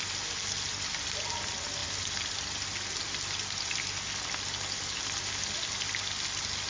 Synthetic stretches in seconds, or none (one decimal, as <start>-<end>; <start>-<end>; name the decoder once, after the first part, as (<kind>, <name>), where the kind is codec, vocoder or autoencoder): none